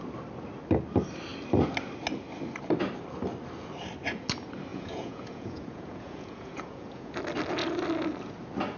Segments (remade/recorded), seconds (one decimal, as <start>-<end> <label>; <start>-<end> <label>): 0.0-4.7 recorded; 4.7-7.1 remade; 7.1-8.8 recorded